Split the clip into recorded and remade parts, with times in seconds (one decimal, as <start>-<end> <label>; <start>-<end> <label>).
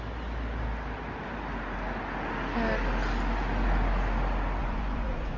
0.0-4.6 recorded; 4.6-5.4 remade